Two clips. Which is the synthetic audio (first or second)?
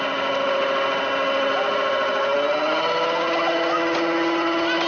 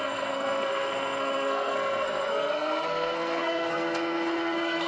second